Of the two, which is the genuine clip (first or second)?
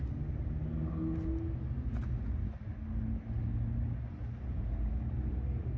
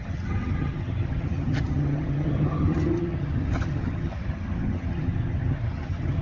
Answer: first